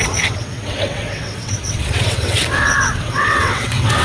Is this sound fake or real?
fake